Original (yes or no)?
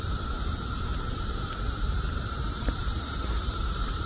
no